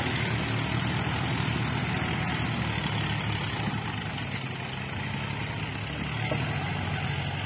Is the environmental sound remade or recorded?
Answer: recorded